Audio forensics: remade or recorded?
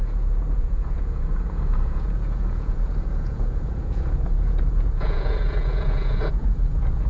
remade